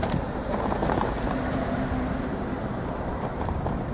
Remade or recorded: remade